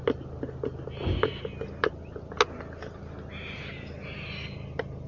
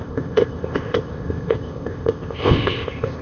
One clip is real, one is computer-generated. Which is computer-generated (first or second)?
second